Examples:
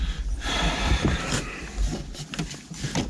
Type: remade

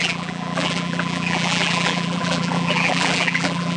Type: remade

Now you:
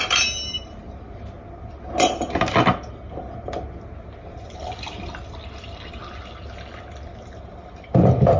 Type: recorded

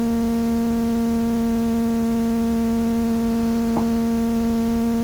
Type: recorded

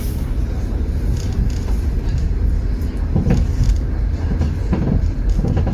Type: recorded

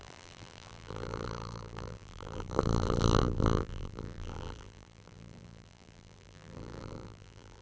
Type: remade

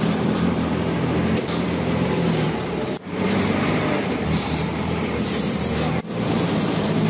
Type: remade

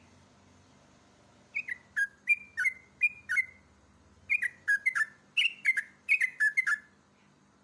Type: recorded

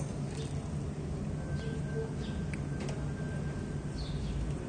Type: recorded